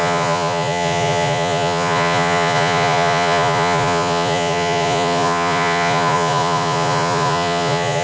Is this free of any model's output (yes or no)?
no